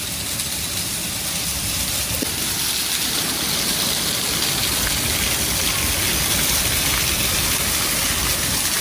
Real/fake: real